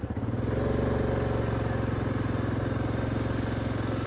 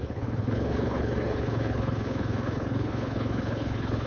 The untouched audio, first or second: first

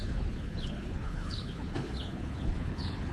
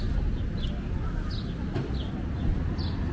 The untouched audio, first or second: second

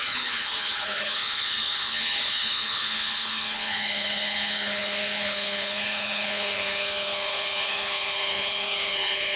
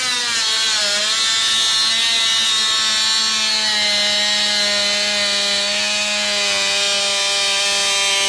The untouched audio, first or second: second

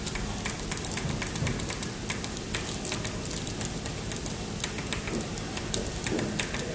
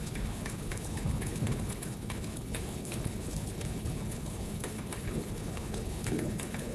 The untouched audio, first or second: first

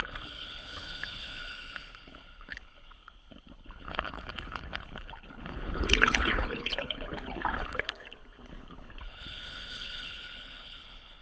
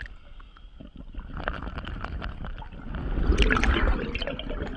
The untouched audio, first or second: second